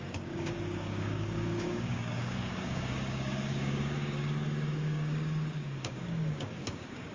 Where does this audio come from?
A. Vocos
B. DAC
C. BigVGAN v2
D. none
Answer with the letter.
B